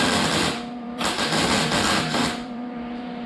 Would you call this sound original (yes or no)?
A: no